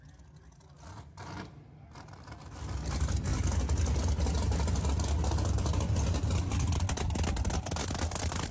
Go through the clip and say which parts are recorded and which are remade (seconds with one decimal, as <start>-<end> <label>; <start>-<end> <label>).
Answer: 0.0-8.5 recorded